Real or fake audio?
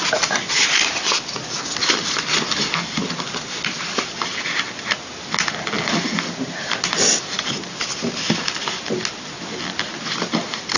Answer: real